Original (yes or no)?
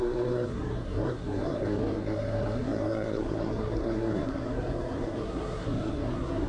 no